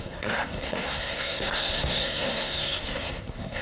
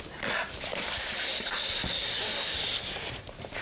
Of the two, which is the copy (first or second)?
first